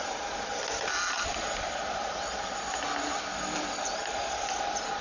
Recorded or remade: recorded